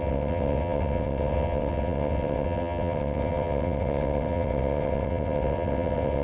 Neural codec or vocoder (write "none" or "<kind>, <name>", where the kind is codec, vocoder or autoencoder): vocoder, WaveNeXt